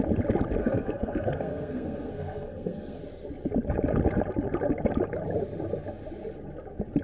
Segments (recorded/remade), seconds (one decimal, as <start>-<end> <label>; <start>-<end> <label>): 0.0-0.6 recorded; 0.6-3.0 remade; 3.0-7.0 recorded